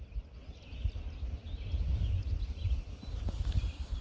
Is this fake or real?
real